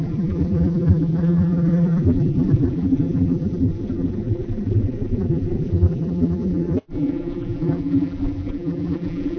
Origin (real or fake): fake